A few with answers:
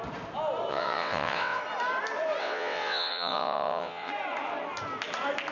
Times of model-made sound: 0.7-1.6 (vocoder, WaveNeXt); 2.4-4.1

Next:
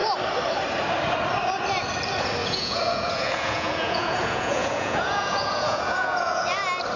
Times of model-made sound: 2.4-6.6 (vocoder, Vocos)

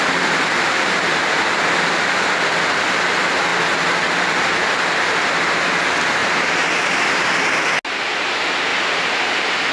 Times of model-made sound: 6.2-7.6 (vocoder, BigVGAN v2); 8.7-9.7

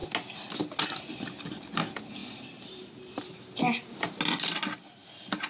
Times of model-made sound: 2.2-4.0 (vocoder, BigVGAN v2); 5.0-5.5

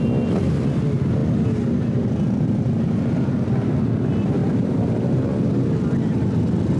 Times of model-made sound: 4.4-5.3 (vocoder, BigVGAN v2)

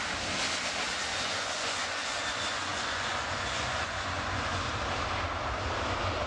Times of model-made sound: 1.1-4.7 (vocoder, Vocos)

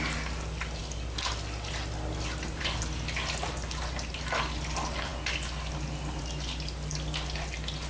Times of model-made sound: none